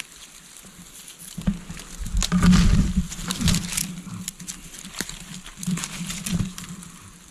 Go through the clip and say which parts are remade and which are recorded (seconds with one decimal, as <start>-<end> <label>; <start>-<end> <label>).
0.0-2.2 remade; 2.2-3.0 recorded; 3.0-7.3 remade